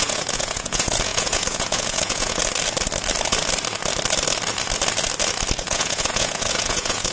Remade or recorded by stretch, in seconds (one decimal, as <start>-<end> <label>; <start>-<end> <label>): 0.0-2.4 remade; 2.4-5.6 recorded; 5.6-7.1 remade